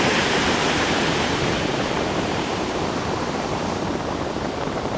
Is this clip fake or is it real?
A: fake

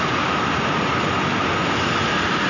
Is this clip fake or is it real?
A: real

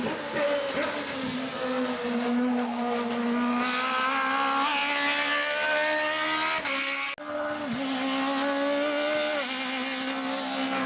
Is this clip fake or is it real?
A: real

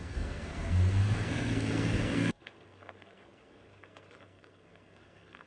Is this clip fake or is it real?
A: fake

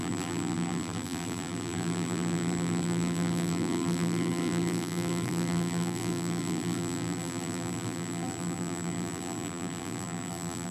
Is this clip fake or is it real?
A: fake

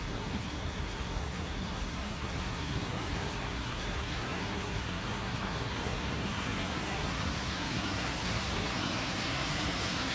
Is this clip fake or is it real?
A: fake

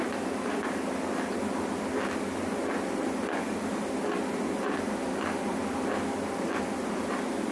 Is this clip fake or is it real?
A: real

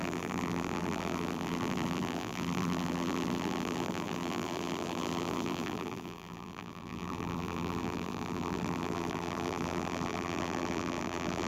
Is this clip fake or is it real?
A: fake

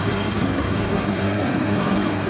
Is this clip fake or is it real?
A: fake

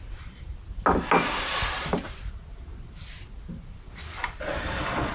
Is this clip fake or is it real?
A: real